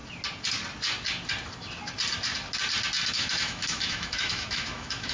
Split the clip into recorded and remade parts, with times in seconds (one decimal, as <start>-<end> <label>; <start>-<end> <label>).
0.0-3.1 recorded; 3.1-5.1 remade